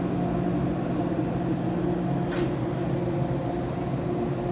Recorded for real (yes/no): yes